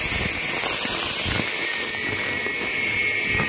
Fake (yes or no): no